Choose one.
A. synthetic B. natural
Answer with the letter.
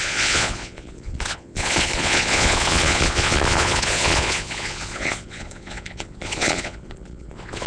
A